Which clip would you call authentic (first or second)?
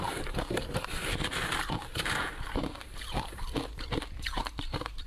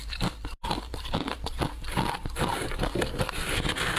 second